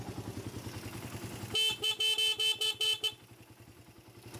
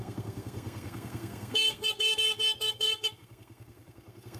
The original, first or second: first